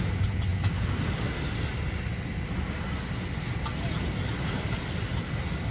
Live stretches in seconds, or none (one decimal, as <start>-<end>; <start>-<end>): 0.0-5.7